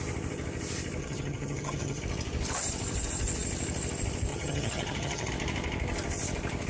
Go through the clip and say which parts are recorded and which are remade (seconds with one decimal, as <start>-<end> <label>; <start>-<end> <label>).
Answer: 0.0-1.0 recorded; 1.0-2.0 remade; 2.0-4.3 recorded; 4.3-5.3 remade; 5.3-6.7 recorded